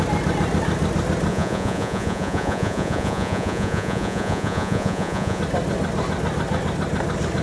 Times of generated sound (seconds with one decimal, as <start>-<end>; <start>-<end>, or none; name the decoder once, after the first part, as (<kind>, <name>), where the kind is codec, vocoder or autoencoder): 1.3-5.4 (vocoder, Vocos)